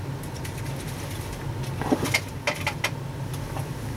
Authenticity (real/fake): real